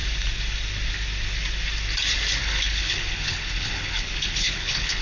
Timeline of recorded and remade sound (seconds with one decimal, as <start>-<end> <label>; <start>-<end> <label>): 0.0-2.4 recorded; 2.4-5.0 remade